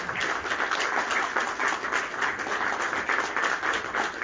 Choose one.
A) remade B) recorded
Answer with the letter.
B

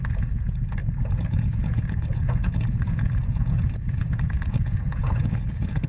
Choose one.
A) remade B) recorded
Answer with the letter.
A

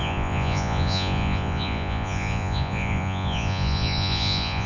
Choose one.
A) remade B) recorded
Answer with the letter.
A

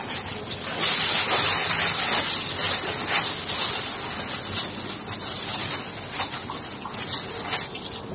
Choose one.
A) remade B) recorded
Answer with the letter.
B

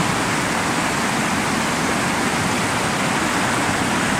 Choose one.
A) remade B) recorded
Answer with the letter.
B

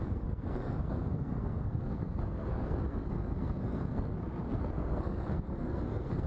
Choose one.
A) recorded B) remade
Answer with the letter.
B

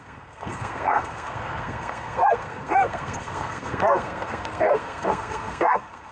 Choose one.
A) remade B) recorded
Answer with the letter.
A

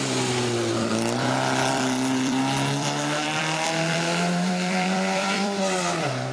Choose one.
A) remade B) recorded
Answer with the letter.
A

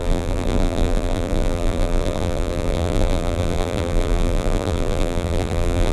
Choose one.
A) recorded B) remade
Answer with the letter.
B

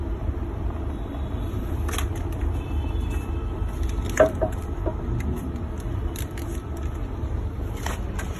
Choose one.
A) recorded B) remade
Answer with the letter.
B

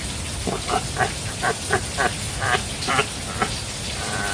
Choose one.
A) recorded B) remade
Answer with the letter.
A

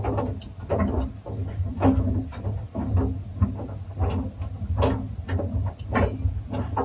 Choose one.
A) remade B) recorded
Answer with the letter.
B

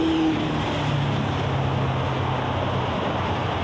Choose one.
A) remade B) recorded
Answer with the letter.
B